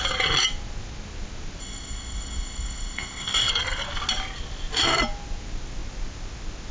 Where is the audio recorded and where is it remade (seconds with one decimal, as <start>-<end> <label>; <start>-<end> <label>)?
0.0-1.6 recorded; 1.6-3.5 remade; 3.5-6.7 recorded